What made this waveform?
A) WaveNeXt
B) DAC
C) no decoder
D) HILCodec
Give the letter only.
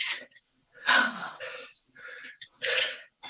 A